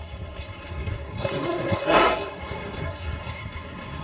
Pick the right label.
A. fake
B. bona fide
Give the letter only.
A